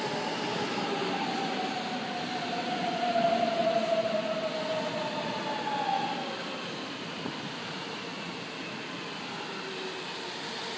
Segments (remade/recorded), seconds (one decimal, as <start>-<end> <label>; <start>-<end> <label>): 0.0-10.8 recorded